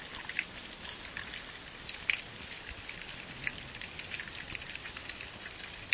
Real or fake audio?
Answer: real